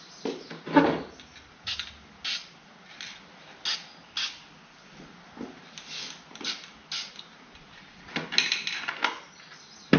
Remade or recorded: recorded